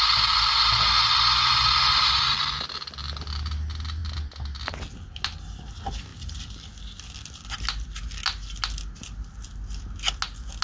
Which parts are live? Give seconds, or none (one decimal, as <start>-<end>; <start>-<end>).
0.0-10.6